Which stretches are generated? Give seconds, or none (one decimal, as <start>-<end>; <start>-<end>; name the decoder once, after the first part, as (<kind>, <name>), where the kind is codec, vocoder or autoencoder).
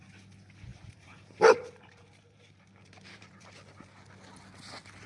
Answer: 0.7-3.5 (vocoder, BigVGAN v2)